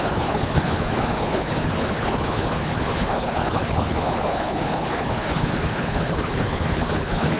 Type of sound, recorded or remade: remade